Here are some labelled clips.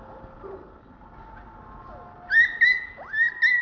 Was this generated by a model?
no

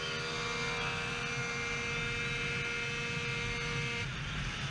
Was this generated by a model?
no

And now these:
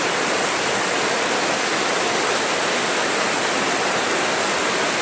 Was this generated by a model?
no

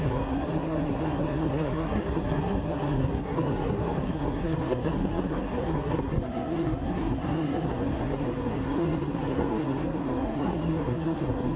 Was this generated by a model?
yes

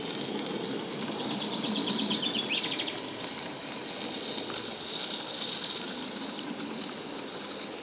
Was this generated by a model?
no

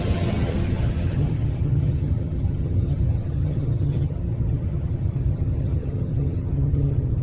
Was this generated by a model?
yes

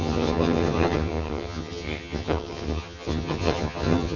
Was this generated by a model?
yes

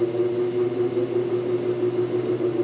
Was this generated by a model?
no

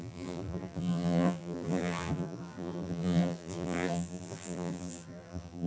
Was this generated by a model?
yes